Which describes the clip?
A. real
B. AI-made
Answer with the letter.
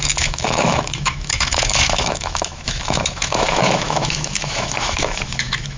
B